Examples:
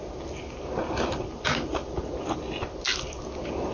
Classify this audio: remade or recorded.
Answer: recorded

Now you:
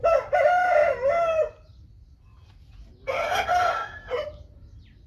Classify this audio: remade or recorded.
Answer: recorded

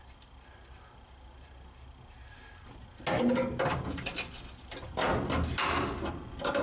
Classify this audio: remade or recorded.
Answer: recorded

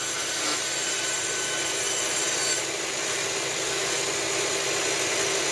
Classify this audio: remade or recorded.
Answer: recorded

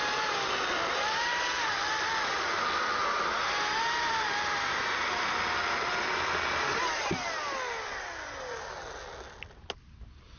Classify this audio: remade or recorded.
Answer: recorded